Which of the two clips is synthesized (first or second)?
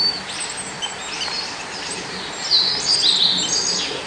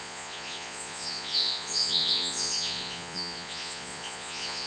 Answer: second